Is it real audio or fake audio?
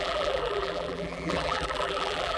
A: fake